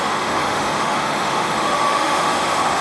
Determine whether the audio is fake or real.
fake